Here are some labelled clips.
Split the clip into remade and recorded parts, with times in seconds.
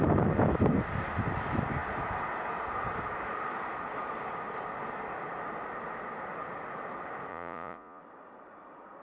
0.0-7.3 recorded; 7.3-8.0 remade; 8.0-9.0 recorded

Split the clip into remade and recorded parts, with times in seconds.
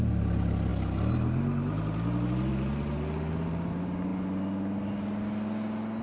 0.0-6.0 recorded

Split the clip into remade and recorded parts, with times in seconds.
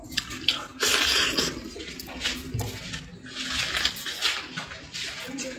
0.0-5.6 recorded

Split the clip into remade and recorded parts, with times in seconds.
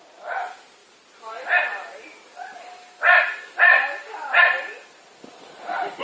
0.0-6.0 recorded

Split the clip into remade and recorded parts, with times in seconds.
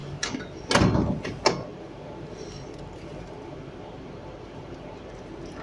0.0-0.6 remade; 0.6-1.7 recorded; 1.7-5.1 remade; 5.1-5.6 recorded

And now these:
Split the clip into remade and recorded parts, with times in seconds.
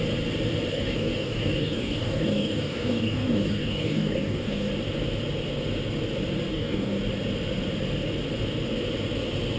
0.0-0.7 recorded; 0.7-4.7 remade; 4.7-6.5 recorded; 6.5-7.0 remade; 7.0-9.6 recorded